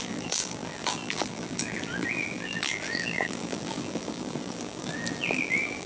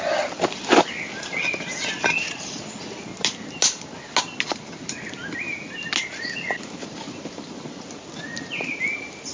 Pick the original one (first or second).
second